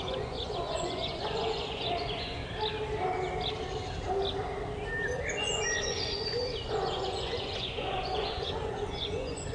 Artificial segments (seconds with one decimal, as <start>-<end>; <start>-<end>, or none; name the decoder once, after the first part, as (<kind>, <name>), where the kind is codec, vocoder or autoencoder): 0.0-2.4 (vocoder, Vocos); 5.3-9.5

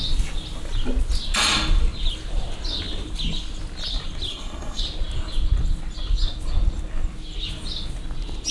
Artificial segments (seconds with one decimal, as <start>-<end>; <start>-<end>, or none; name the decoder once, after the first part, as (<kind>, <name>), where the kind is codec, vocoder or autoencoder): 4.3-4.8 (codec, SNAC)

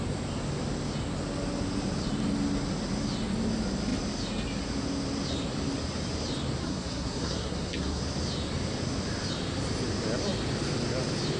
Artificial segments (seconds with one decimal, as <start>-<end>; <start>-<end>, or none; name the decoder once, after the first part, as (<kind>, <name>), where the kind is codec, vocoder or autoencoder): 6.6-8.0 (codec, SNAC)

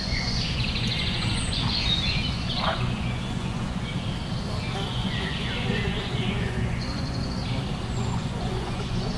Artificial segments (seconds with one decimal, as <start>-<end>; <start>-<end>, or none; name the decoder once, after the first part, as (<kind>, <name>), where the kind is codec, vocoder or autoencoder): 0.0-3.9 (vocoder, Vocos); 4.9-7.4; 7.9-9.2

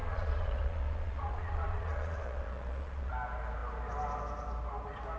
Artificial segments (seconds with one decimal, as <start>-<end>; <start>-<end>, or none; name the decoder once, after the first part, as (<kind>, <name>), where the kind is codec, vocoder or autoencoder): 0.0-3.1 (vocoder, Vocos)